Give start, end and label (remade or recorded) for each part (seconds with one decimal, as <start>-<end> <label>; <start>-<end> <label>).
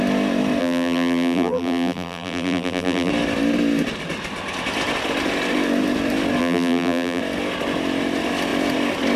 0.0-0.6 recorded; 0.6-3.1 remade; 3.1-6.4 recorded; 6.4-7.2 remade; 7.2-9.2 recorded